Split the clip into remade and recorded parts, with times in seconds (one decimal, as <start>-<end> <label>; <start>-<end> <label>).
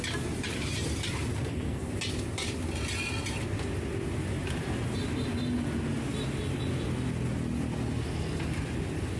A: 0.0-1.3 recorded; 1.3-1.9 remade; 1.9-9.2 recorded